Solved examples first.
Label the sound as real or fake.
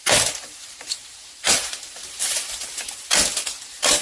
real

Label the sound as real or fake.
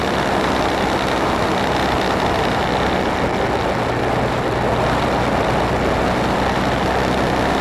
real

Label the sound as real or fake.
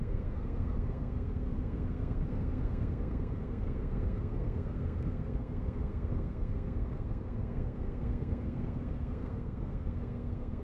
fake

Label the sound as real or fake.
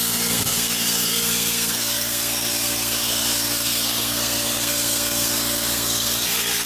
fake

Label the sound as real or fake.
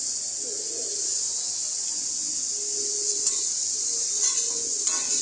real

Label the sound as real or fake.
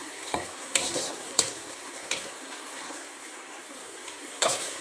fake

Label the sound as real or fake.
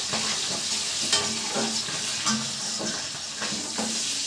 real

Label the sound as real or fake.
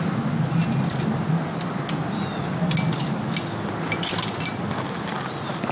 real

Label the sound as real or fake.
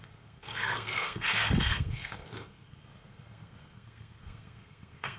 fake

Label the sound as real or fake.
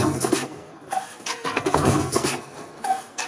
fake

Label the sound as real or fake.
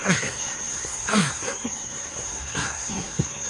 fake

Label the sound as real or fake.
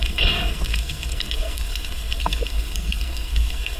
fake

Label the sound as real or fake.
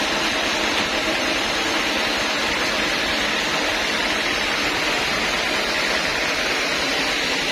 real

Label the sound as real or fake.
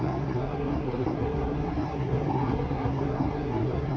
fake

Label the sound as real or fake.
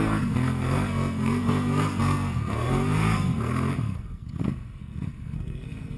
fake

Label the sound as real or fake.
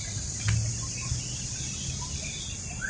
real